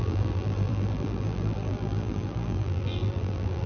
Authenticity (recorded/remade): remade